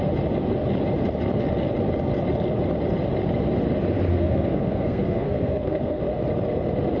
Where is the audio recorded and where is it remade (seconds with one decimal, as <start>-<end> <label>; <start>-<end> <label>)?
0.0-4.1 recorded; 4.1-6.0 remade; 6.0-7.0 recorded